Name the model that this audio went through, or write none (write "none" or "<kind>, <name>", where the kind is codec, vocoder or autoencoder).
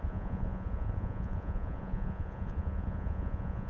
vocoder, Vocos